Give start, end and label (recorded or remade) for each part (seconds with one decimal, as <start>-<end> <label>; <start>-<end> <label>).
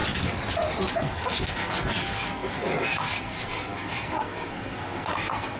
0.0-0.9 recorded; 0.9-5.6 remade